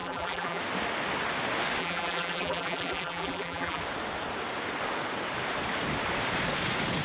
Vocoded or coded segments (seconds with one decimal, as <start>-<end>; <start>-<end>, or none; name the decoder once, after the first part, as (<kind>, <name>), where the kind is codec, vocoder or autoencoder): 0.0-0.6 (vocoder, BigVGAN v2); 1.8-3.8